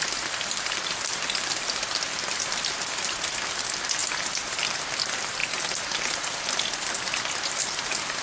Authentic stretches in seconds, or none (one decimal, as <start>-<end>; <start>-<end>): 5.4-6.9